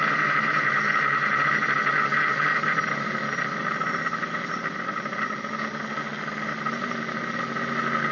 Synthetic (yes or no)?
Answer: no